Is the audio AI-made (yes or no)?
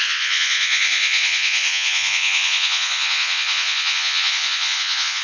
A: yes